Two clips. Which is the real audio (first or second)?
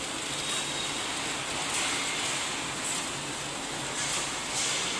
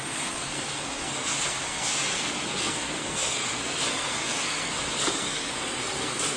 first